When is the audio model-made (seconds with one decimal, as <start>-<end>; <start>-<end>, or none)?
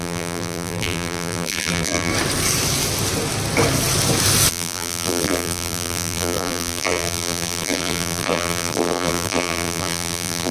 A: 0.0-2.1; 4.5-10.5